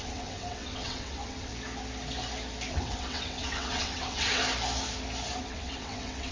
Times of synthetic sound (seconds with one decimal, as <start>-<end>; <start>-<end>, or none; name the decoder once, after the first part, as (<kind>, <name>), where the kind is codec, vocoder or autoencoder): 0.0-1.5 (vocoder, WaveNeXt); 2.7-4.4; 5.4-6.3